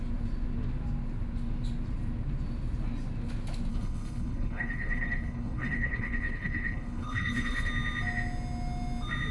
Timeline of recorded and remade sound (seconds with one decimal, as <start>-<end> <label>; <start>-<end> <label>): 0.0-3.7 recorded; 3.7-7.7 remade; 7.7-9.3 recorded